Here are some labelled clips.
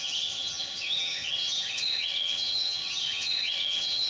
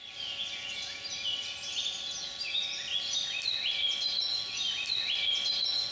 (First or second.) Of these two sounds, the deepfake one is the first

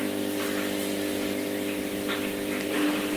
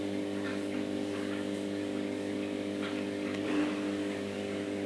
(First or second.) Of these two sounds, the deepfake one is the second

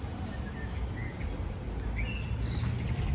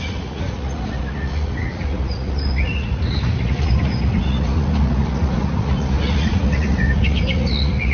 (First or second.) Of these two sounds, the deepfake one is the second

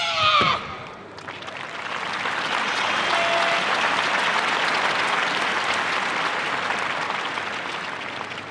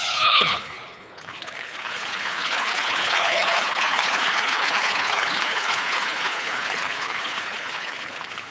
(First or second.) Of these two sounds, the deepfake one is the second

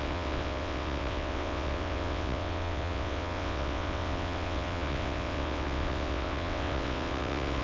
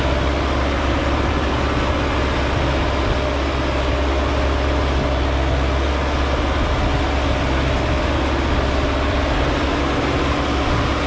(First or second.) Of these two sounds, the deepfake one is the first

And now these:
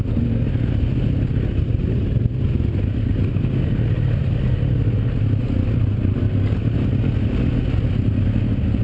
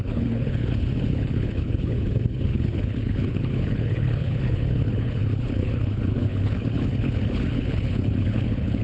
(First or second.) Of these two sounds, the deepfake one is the second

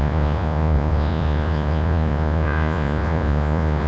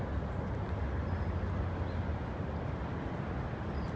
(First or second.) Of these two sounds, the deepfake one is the first